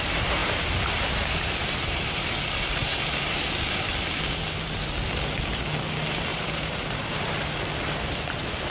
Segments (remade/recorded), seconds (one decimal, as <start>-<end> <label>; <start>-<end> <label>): 0.0-6.3 recorded; 6.3-7.5 remade; 7.5-8.7 recorded